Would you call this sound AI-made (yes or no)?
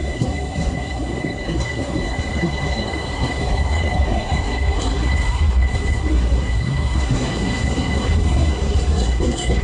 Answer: yes